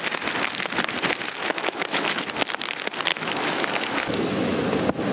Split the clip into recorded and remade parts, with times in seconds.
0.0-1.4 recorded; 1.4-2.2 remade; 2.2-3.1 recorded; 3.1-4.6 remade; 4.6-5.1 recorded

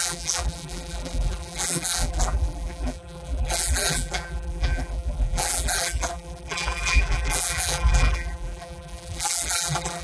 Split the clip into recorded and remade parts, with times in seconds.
0.0-10.0 remade

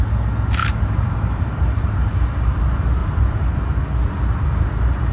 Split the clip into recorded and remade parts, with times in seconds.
0.0-0.6 recorded; 0.6-2.1 remade; 2.1-3.0 recorded; 3.0-3.7 remade; 3.7-5.1 recorded

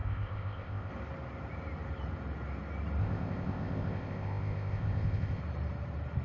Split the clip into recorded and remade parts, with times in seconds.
0.0-0.9 remade; 0.9-3.0 recorded; 3.0-5.4 remade; 5.4-6.2 recorded

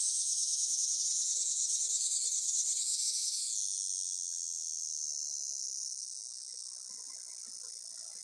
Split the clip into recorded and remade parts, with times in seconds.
0.0-1.6 recorded; 1.6-2.8 remade; 2.8-8.2 recorded

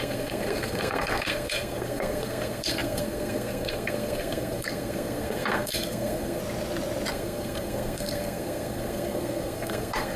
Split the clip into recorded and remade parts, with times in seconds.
0.0-6.4 remade; 6.4-7.1 recorded; 7.1-10.2 remade